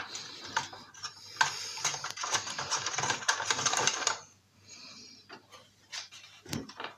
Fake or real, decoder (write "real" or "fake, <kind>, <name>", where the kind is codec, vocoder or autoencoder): fake, vocoder, BigVGAN v2